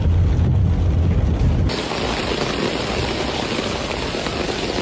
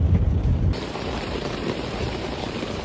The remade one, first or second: second